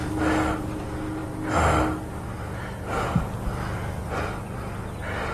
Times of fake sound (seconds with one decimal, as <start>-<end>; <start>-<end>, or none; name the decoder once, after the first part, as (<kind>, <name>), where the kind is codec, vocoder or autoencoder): none